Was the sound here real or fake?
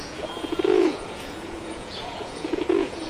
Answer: fake